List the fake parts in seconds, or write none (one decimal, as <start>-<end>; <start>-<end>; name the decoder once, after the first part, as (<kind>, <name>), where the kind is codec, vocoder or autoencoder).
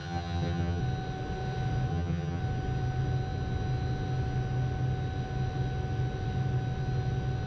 0.0-0.8 (vocoder, HiFi-GAN); 1.9-2.4